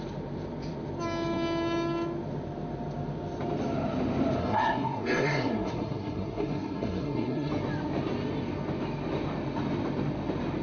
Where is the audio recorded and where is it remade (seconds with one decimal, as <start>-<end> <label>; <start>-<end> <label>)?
0.0-4.4 recorded; 4.4-7.5 remade; 7.5-10.6 recorded